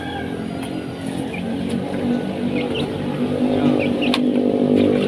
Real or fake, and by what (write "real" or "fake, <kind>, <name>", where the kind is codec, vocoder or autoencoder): real